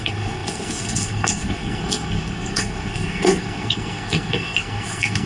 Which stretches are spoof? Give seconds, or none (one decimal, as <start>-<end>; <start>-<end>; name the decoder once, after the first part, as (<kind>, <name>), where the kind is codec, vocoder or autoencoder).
0.0-5.3 (codec, SNAC)